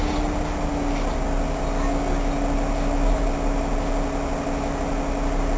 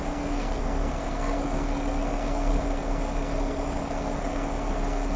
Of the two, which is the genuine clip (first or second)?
first